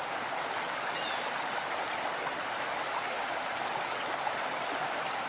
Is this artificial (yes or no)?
no